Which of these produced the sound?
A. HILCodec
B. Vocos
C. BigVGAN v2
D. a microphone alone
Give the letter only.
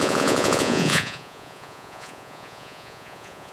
B